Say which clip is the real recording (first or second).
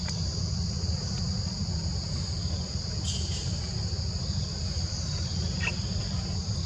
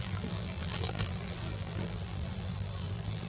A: first